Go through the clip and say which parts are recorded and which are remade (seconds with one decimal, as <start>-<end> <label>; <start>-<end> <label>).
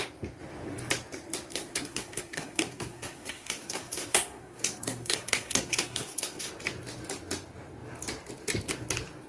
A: 0.0-1.5 recorded; 1.5-6.5 remade; 6.5-9.3 recorded